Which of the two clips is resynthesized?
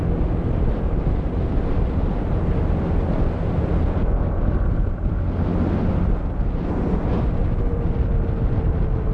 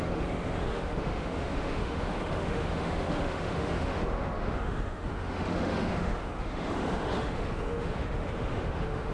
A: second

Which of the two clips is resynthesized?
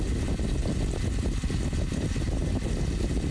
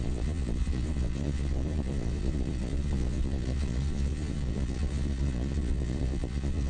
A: second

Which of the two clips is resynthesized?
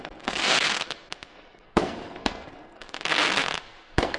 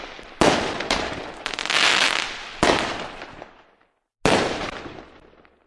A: first